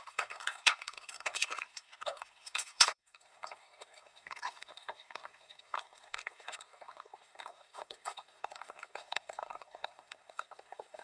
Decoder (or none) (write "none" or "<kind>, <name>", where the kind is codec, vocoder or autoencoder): codec, SNAC